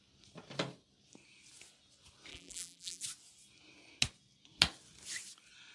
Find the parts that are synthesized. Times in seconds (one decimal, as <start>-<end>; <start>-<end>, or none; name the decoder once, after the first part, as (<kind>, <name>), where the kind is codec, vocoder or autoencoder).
2.3-3.0 (vocoder, BigVGAN v2)